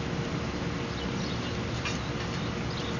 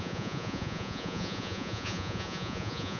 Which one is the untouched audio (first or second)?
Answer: first